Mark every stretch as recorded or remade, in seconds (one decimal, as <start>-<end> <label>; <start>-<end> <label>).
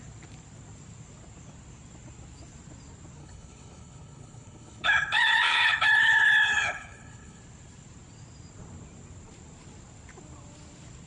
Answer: 0.0-3.2 recorded; 3.2-7.4 remade; 7.4-11.1 recorded